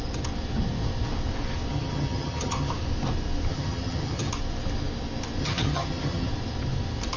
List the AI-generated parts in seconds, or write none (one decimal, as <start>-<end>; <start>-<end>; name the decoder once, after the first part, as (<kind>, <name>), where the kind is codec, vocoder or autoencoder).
1.7-2.7 (vocoder, HiFi-GAN); 3.5-4.3; 5.4-6.3